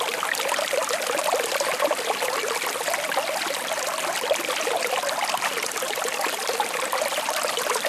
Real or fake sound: real